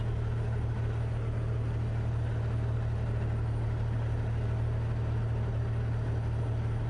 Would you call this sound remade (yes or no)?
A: no